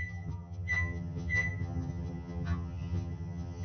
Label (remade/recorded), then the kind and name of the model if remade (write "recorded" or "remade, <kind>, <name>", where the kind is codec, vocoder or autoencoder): remade, vocoder, HiFi-GAN